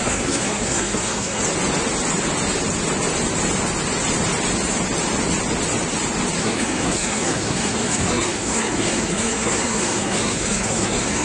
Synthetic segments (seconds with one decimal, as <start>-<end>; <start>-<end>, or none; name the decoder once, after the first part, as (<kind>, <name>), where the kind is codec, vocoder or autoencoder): 0.0-1.4 (codec, SNAC); 6.4-11.2